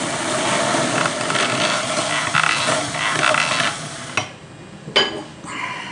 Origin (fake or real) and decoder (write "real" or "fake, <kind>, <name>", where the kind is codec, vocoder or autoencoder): real